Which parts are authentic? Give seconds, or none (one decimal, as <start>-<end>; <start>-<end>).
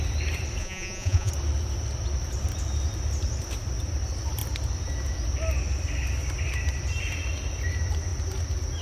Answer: 0.0-0.6; 1.3-8.8